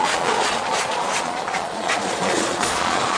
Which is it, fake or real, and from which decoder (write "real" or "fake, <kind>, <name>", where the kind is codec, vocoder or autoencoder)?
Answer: fake, vocoder, Vocos